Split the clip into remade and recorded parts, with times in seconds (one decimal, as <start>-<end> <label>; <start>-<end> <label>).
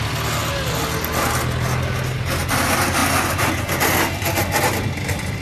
0.0-5.4 recorded